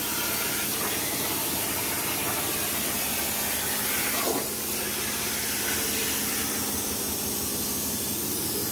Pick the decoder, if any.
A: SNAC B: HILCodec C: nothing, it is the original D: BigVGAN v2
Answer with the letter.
C